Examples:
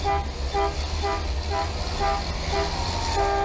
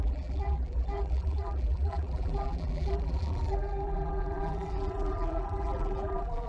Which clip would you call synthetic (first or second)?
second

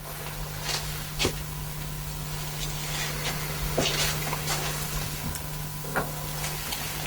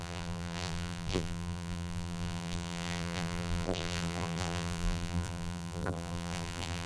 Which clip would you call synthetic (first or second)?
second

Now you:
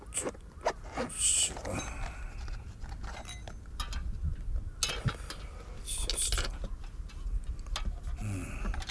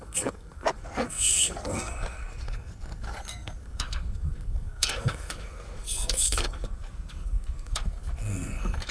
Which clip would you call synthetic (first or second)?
second